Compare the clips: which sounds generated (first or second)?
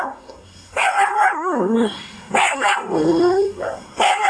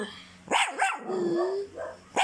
first